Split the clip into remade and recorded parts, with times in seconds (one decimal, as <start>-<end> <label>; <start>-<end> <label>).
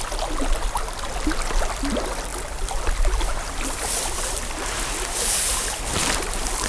0.0-6.7 recorded